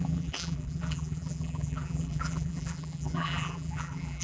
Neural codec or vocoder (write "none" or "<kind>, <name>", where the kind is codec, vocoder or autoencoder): vocoder, BigVGAN v2